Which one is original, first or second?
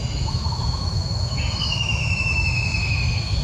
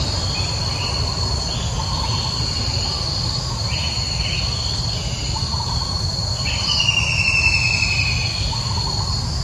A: second